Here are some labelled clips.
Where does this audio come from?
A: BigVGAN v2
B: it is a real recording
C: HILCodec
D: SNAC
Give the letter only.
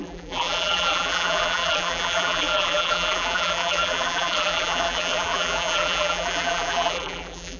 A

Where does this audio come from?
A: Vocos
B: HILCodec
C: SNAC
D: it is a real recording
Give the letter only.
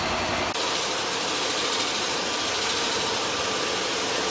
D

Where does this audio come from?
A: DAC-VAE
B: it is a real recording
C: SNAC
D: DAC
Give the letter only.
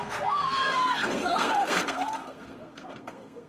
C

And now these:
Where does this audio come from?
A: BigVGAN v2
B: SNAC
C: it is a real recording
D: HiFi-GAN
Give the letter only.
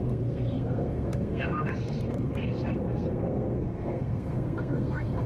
B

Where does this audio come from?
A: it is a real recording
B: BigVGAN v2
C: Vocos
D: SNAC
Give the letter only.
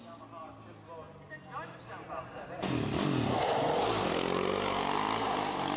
A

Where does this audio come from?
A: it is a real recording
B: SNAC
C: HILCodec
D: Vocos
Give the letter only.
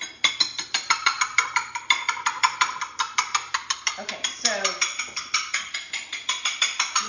A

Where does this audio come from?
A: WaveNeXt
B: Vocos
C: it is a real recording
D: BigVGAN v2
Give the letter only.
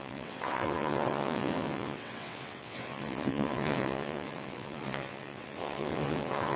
A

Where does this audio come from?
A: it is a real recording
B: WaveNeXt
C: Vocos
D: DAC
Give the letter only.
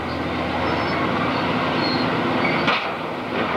A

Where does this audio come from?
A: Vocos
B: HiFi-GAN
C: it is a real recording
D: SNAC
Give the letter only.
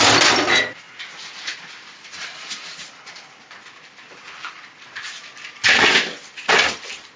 C